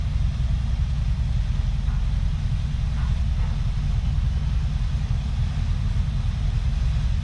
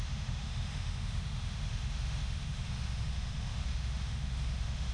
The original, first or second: first